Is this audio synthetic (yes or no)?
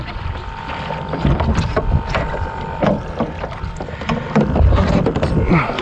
no